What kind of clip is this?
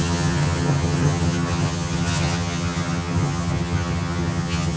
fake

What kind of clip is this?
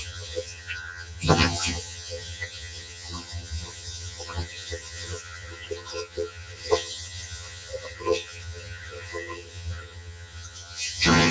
fake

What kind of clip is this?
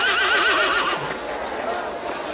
real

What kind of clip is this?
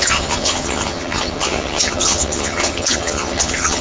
fake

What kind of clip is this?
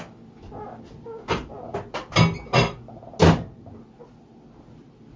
real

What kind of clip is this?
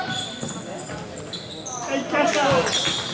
real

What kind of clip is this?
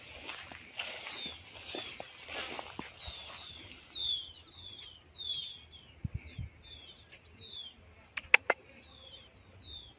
real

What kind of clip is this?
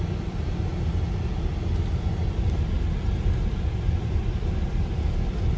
real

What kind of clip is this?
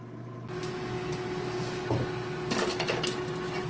real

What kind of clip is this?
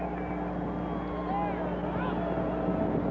real